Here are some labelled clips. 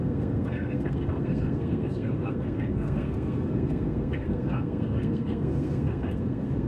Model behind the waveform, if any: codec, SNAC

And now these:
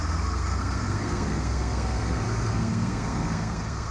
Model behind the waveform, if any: codec, SNAC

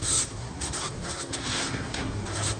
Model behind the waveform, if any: codec, SNAC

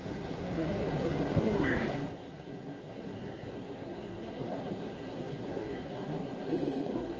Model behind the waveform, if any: codec, SNAC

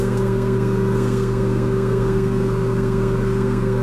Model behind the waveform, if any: codec, SNAC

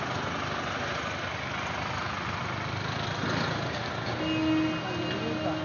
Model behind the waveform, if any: none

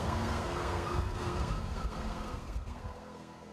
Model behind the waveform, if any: codec, SNAC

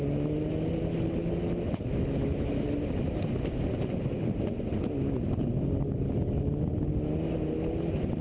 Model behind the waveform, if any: none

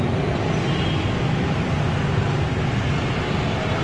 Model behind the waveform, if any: none